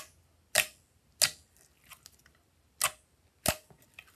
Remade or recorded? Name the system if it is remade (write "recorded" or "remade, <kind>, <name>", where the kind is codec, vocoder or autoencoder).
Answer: recorded